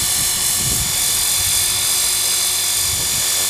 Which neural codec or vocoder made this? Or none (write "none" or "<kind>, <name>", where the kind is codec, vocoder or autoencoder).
none